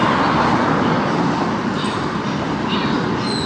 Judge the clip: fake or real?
real